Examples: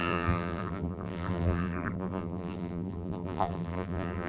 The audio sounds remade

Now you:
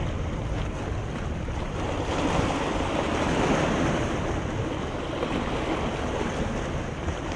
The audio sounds recorded